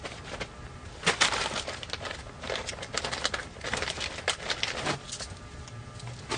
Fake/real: real